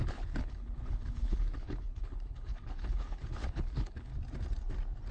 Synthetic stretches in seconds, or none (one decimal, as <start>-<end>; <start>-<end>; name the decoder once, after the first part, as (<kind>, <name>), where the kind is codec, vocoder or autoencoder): 0.0-4.1 (codec, HILCodec)